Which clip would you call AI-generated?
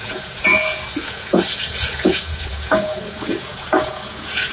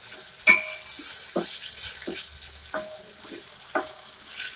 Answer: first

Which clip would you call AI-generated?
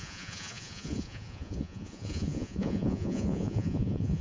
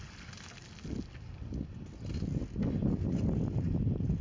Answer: first